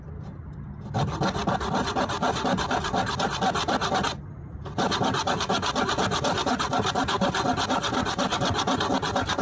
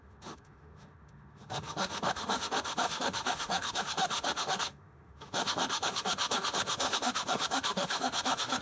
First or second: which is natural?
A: first